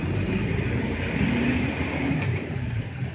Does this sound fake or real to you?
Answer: fake